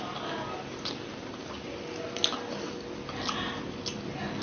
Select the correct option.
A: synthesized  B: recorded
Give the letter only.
B